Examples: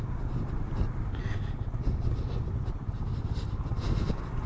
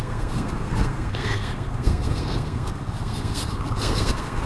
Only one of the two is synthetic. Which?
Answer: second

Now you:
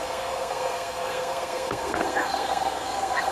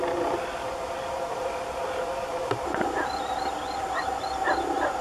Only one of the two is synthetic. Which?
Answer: first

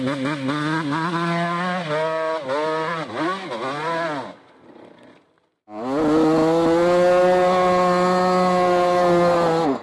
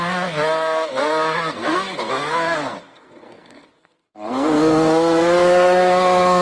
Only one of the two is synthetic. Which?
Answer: second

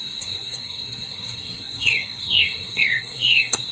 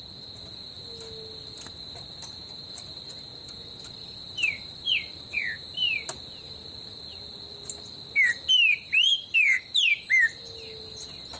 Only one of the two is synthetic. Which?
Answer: first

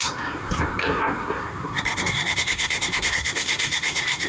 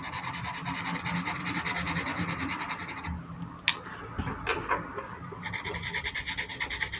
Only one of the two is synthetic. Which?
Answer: first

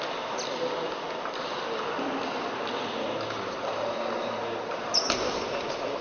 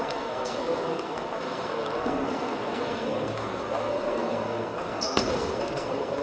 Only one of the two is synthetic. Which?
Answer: second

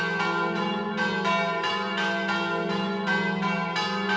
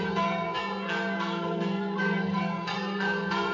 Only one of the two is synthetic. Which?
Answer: second